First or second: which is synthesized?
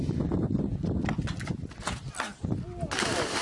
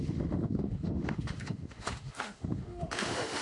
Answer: second